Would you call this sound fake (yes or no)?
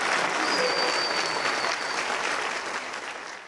no